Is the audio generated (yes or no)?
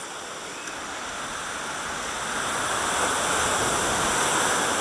no